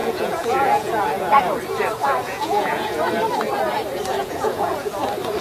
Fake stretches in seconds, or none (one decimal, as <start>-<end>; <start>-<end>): 0.0-1.0; 2.0-3.0; 4.2-4.9